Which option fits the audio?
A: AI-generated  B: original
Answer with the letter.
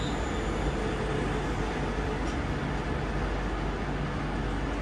B